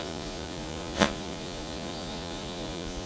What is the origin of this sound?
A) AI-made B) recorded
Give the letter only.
A